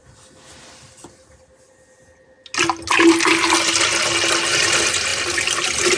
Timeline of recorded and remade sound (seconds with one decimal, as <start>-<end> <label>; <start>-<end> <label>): 0.0-6.0 recorded